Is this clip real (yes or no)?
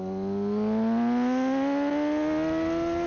yes